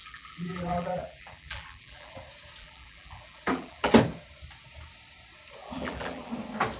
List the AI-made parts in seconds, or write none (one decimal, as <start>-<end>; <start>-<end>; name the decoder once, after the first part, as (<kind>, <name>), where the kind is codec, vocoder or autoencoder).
0.0-2.2 (vocoder, BigVGAN v2); 2.6-3.9; 5.6-6.3